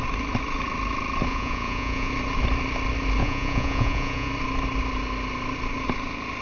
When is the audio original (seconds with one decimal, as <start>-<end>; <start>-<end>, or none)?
0.0-1.3; 2.1-3.2; 4.3-6.4